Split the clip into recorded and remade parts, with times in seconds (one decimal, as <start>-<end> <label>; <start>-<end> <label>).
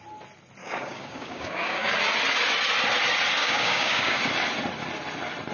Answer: 0.0-0.6 recorded; 0.6-1.9 remade; 1.9-3.4 recorded; 3.4-4.2 remade; 4.2-5.5 recorded